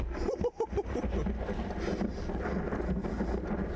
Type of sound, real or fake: real